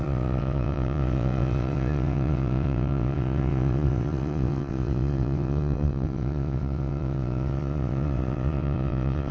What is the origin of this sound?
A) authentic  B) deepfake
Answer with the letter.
B